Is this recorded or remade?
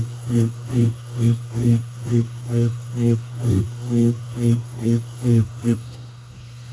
remade